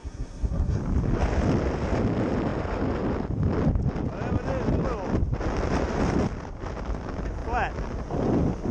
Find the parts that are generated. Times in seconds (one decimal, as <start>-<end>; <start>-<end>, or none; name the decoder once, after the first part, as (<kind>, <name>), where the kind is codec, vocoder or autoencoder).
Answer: 0.0-0.8 (codec, SNAC)